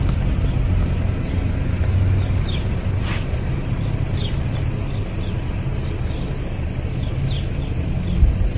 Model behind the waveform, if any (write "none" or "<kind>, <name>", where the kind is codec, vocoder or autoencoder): none